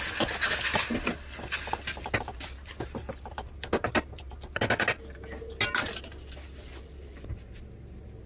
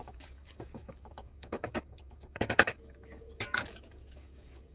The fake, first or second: second